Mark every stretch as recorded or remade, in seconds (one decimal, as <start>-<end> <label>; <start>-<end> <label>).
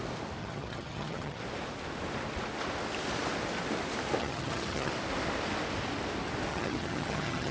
0.0-0.4 recorded; 0.4-1.4 remade; 1.4-4.2 recorded; 4.2-4.9 remade; 4.9-6.5 recorded; 6.5-7.5 remade